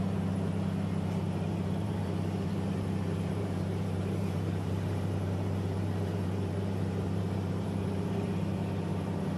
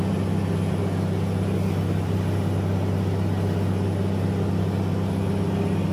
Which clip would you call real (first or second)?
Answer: second